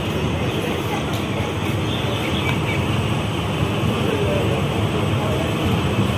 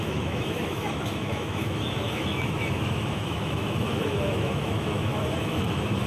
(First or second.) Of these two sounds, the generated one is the second